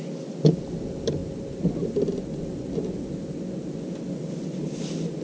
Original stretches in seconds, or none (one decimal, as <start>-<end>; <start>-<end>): 0.0-5.2